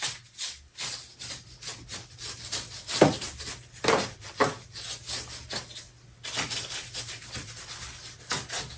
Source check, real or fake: real